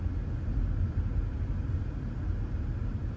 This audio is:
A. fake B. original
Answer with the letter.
B